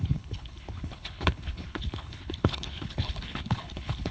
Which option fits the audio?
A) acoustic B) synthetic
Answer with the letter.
B